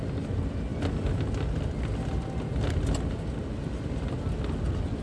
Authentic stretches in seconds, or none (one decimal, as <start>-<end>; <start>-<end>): 0.0-5.0